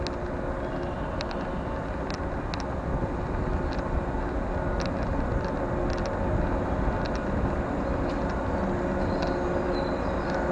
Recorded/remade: recorded